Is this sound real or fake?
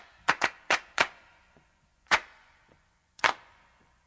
fake